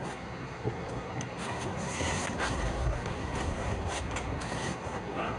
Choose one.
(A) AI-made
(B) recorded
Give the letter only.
A